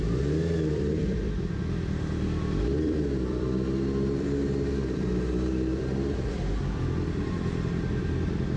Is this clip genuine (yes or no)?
no